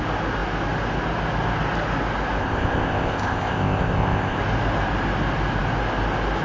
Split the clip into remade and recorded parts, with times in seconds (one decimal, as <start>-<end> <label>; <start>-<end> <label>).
0.0-2.4 recorded; 2.4-4.4 remade; 4.4-6.4 recorded